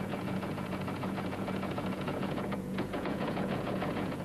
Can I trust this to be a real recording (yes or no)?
no